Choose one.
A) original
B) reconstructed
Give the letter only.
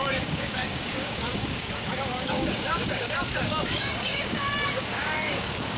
B